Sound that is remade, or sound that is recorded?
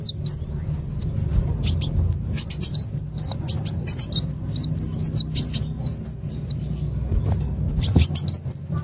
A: recorded